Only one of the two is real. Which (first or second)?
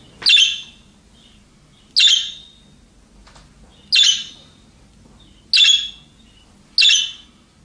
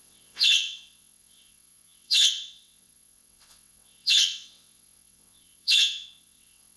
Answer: first